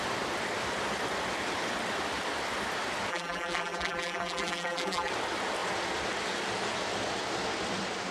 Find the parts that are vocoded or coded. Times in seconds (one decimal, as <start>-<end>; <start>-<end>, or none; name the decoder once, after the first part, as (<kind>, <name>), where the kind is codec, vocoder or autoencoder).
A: 3.1-5.1 (vocoder, BigVGAN v2)